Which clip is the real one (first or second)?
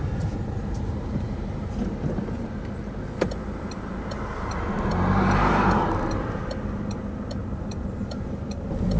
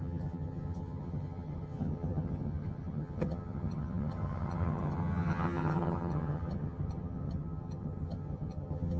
first